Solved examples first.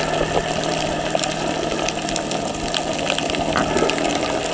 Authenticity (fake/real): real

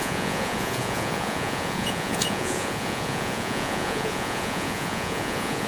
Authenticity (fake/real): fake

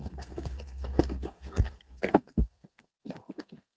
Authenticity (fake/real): fake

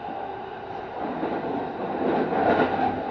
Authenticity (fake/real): real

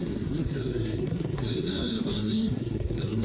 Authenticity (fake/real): fake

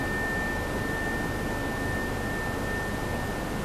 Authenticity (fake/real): real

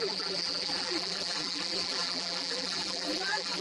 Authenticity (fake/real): fake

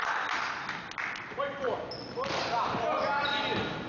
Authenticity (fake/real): real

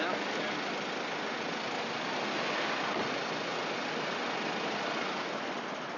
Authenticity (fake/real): real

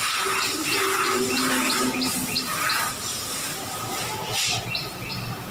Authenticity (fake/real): real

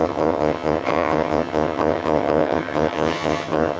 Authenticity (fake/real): fake